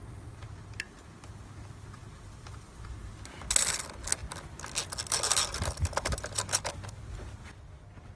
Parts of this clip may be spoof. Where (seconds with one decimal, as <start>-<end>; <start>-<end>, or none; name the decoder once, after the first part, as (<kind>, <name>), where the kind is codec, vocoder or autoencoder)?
none

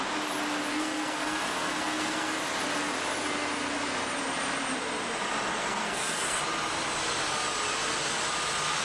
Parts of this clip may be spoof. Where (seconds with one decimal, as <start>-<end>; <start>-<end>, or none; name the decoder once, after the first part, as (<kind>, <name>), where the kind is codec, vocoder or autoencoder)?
0.7-2.4 (codec, SNAC); 5.5-6.4